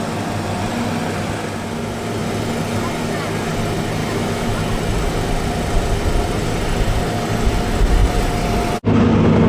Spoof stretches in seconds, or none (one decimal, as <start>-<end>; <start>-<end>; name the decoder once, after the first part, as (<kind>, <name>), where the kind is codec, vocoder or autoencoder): 4.0-4.6 (autoencoder, DAC-VAE)